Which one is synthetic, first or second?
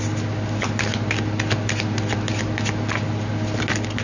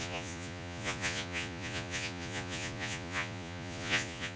second